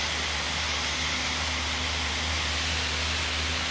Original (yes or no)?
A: yes